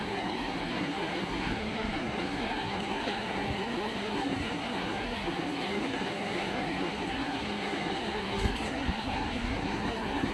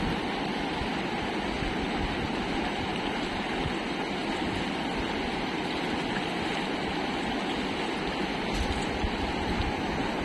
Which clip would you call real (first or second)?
second